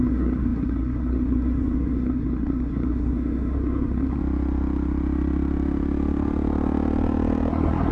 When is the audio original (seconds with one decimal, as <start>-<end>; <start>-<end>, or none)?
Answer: 4.2-7.5